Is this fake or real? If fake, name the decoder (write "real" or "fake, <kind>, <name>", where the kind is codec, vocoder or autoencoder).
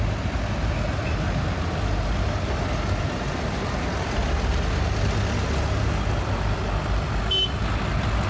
real